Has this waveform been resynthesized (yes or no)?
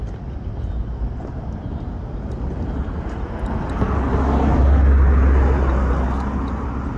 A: no